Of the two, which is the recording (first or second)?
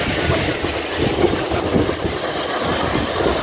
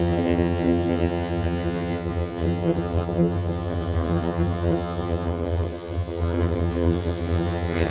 first